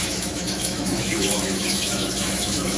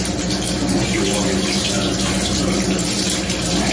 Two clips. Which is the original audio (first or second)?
second